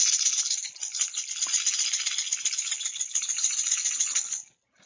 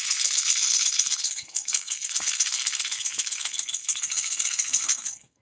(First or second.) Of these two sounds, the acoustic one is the first